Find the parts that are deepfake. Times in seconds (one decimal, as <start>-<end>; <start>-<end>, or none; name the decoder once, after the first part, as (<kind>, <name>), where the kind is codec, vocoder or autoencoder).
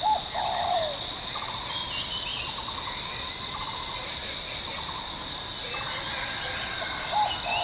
none